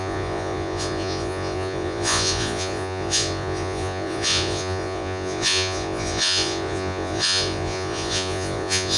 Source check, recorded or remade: remade